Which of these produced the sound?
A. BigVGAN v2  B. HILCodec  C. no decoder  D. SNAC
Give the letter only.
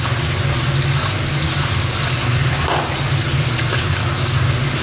C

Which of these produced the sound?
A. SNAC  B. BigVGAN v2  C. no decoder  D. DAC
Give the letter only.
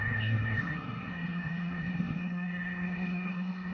A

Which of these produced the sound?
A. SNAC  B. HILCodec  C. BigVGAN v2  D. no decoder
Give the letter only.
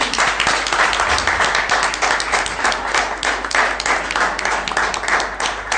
D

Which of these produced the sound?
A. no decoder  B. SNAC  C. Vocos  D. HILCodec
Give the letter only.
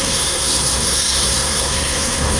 B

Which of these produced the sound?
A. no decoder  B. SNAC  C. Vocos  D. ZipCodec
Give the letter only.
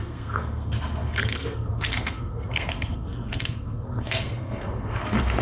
B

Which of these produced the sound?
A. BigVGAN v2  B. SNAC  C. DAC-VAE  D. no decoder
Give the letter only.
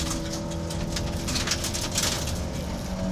D